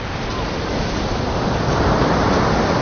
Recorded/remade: recorded